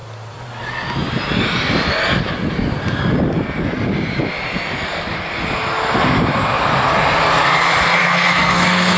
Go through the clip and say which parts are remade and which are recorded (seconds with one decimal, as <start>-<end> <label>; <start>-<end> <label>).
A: 0.0-8.0 recorded; 8.0-9.0 remade